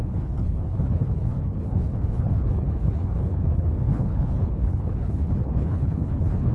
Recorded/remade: remade